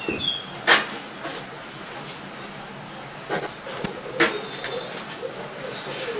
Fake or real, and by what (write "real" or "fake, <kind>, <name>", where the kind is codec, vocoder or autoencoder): real